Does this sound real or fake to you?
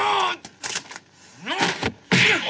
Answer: real